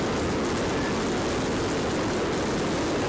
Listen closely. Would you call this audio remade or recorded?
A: recorded